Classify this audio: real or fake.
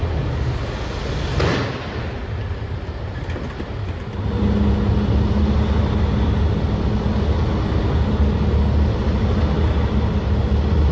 real